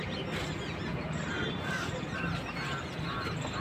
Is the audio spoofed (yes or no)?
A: no